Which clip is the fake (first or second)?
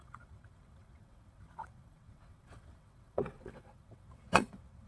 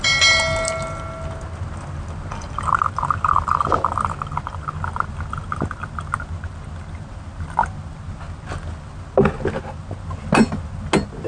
first